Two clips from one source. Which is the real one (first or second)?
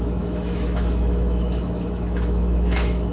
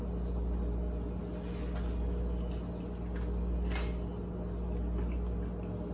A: second